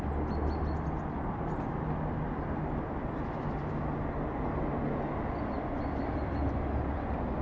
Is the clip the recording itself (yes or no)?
yes